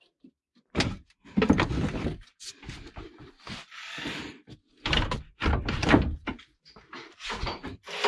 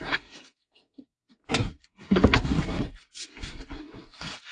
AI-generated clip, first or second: second